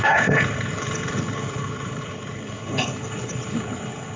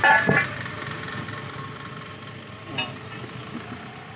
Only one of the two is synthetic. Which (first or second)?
first